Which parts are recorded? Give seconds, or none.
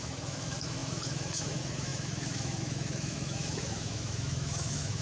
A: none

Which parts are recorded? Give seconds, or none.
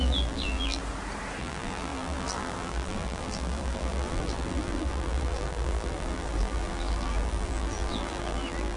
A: 0.8-1.4